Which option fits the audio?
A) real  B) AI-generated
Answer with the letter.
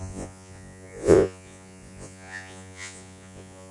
B